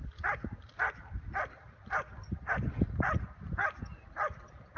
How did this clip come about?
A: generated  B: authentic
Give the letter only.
B